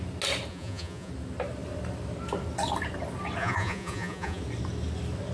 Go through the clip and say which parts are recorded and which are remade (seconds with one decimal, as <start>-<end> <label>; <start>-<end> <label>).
0.0-0.5 recorded; 0.5-1.1 remade; 1.1-3.4 recorded; 3.4-4.4 remade; 4.4-5.3 recorded